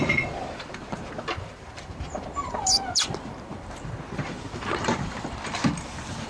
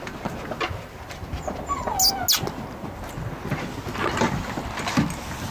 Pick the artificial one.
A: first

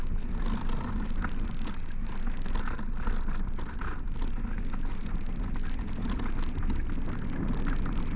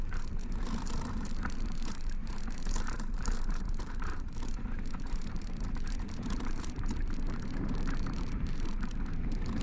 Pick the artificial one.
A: second